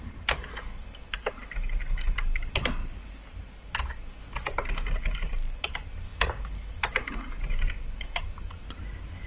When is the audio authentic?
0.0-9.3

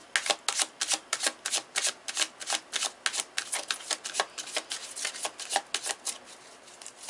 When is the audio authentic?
0.0-7.1

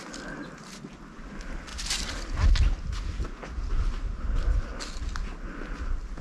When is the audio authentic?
0.0-6.2

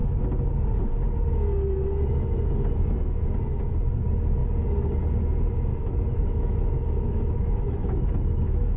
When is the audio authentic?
0.0-5.7

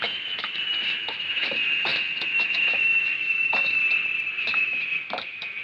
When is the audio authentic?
3.8-4.4

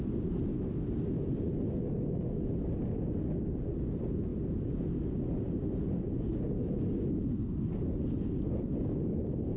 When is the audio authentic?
0.0-9.6

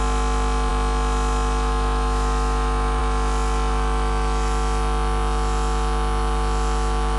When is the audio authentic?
none

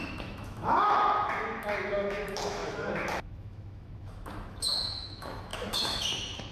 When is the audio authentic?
none